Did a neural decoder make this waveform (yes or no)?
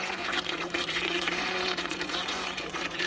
yes